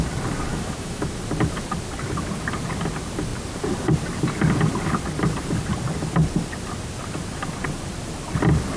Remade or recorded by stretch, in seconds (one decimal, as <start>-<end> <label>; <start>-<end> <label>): 0.0-0.5 recorded; 0.5-1.2 remade; 1.2-8.8 recorded